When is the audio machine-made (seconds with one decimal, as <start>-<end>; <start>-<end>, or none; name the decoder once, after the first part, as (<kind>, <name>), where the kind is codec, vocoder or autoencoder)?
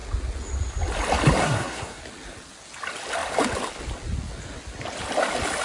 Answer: 1.4-2.0 (codec, SNAC)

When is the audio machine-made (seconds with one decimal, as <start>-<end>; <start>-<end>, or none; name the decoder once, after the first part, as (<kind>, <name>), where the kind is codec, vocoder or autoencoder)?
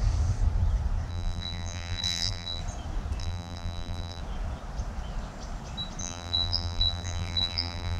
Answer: 1.1-2.6 (vocoder, BigVGAN v2); 3.2-4.2; 6.0-8.0